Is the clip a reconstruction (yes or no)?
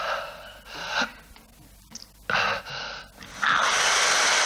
no